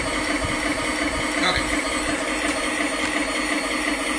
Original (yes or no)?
yes